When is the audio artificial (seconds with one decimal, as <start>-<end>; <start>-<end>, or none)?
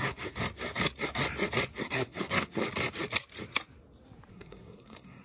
0.0-0.4; 1.8-2.6; 4.3-5.2